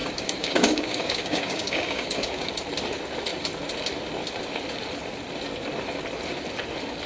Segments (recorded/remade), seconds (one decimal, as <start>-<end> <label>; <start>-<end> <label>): 0.0-2.5 remade; 2.5-7.1 recorded